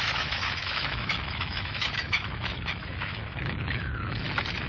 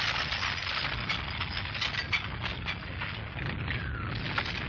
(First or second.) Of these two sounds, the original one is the second